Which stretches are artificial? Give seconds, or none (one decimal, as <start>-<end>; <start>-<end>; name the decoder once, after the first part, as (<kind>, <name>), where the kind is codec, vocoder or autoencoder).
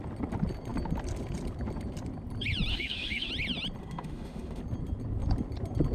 2.7-3.3 (autoencoder, DAC-VAE); 3.8-4.6